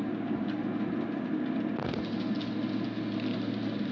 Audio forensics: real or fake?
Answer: real